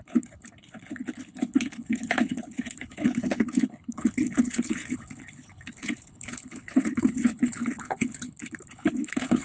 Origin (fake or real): fake